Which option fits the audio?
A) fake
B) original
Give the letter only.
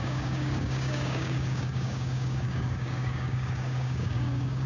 A